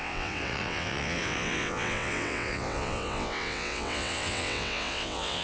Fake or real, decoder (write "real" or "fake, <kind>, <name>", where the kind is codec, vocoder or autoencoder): fake, vocoder, WaveNeXt